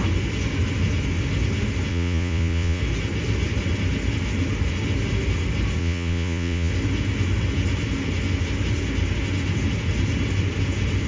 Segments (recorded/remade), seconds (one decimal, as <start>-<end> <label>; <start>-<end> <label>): 0.0-1.9 recorded; 1.9-2.8 remade; 2.8-5.8 recorded; 5.8-6.7 remade; 6.7-11.1 recorded